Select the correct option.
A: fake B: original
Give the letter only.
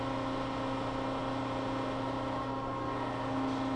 B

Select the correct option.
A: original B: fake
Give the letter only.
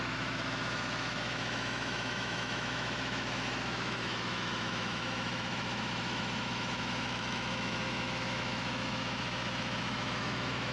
B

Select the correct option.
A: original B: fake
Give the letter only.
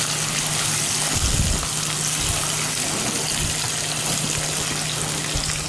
A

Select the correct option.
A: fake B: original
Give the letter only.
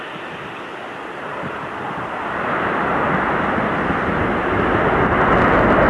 B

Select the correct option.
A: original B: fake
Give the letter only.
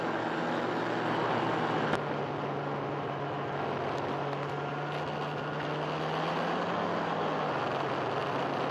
A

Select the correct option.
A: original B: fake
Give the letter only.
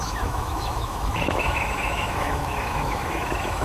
B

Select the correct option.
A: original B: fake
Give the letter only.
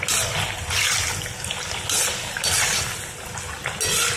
A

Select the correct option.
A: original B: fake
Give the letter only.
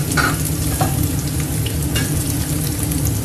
A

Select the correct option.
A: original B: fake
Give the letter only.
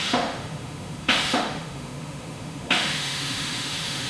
B